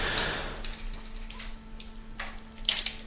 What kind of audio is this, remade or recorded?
recorded